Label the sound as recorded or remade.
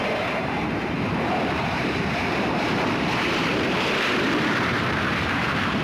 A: remade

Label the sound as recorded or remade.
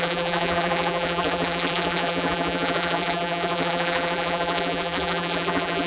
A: remade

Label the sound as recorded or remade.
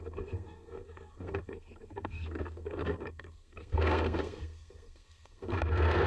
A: remade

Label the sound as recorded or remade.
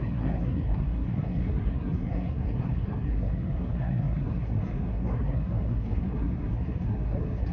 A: remade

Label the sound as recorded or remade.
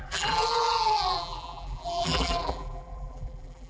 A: remade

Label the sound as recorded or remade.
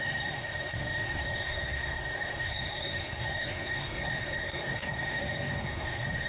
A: remade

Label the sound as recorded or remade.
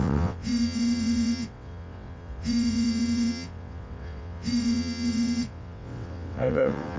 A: remade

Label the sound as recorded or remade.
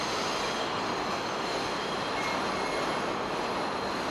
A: recorded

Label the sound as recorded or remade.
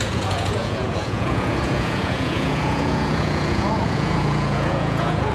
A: remade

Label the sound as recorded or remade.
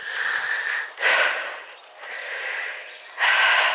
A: recorded